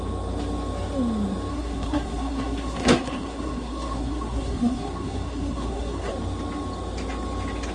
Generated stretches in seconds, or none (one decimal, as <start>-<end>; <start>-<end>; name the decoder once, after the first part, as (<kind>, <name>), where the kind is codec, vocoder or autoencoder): 1.5-6.1 (codec, SNAC)